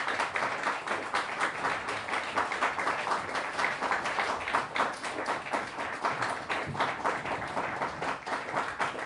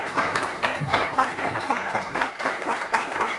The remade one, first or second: second